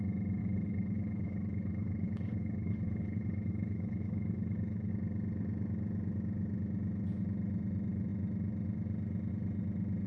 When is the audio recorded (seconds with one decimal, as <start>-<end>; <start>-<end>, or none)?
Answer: 0.0-0.4; 4.9-10.1